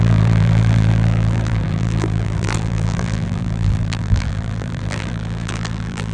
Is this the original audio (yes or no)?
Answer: no